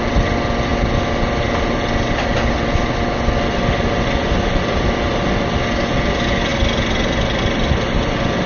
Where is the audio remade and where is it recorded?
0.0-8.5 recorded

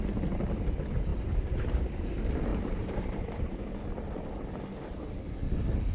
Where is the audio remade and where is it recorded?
0.0-1.1 recorded; 1.1-2.1 remade; 2.1-2.5 recorded; 2.5-3.7 remade; 3.7-5.9 recorded

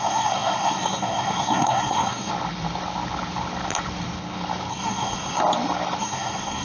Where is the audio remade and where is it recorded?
0.0-2.3 remade; 2.3-4.7 recorded; 4.7-5.4 remade; 5.4-6.0 recorded; 6.0-6.6 remade

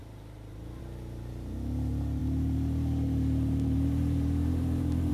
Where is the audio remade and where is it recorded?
0.0-0.8 remade; 0.8-2.2 recorded; 2.2-5.1 remade